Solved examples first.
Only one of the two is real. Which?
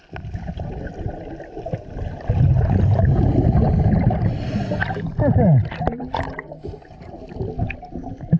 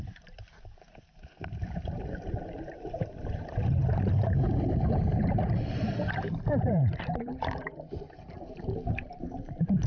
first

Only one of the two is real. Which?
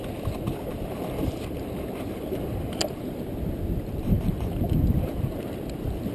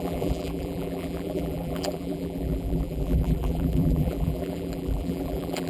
first